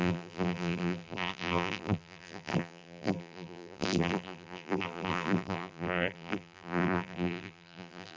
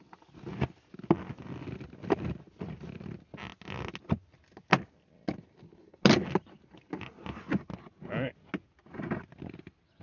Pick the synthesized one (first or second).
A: first